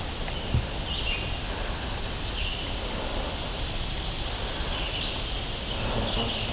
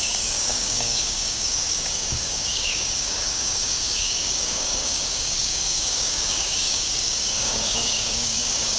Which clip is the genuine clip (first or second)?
first